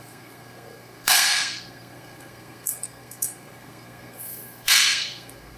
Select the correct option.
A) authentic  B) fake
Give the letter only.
B